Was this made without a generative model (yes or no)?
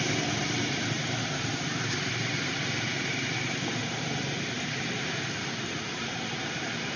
no